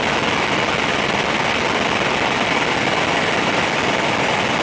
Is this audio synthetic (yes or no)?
no